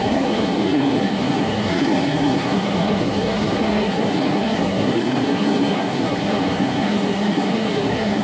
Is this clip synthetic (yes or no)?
yes